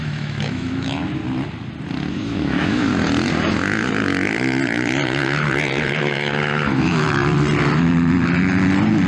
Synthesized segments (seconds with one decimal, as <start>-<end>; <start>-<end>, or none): 0.0-1.2; 2.1-2.9; 5.9-7.2